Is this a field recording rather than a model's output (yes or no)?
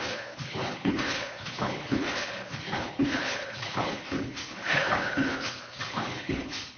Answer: no